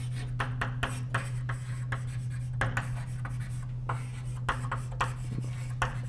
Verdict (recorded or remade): recorded